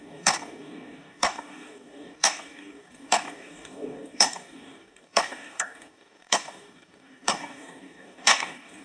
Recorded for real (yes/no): no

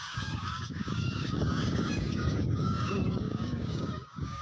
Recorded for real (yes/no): no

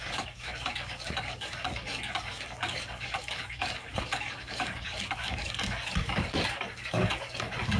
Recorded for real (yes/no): no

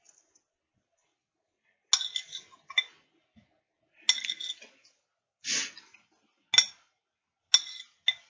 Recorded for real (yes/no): yes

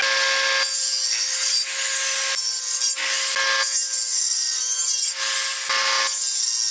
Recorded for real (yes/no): yes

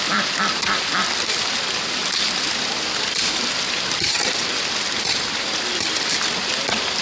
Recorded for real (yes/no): yes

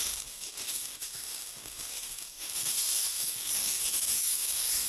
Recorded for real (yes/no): no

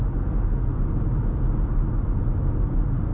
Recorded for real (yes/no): yes